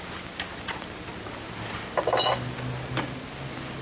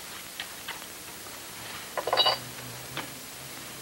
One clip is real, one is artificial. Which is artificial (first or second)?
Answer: second